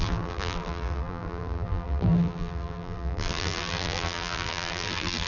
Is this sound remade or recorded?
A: remade